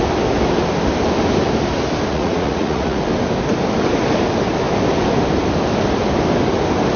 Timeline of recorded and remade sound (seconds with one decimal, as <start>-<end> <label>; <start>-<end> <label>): 0.0-2.1 recorded; 2.1-3.0 remade; 3.0-7.0 recorded